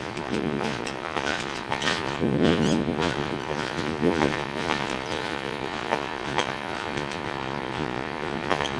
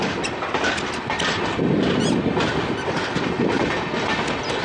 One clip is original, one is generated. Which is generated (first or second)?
first